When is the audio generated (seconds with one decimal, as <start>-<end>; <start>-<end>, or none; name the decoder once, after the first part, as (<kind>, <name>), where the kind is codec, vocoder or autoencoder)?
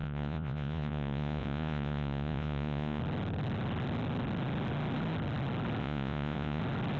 0.0-3.0 (vocoder, Vocos); 5.8-6.6